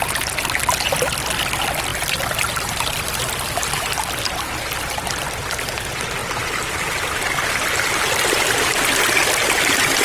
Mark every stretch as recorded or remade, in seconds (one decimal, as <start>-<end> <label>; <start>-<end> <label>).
0.0-0.6 recorded; 0.6-1.1 remade; 1.1-1.9 recorded; 1.9-3.9 remade; 3.9-6.2 recorded; 6.2-8.2 remade; 8.2-10.0 recorded